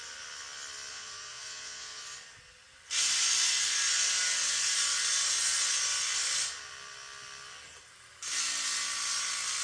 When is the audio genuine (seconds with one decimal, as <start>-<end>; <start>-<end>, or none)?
0.0-0.9; 2.0-9.6